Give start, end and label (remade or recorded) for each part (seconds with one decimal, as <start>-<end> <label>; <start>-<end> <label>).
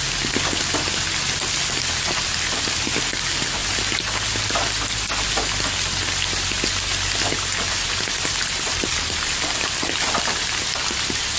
0.0-11.4 recorded